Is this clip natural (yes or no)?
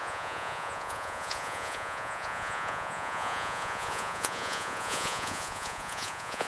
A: no